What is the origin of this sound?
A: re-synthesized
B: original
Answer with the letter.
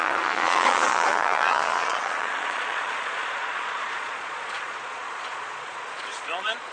A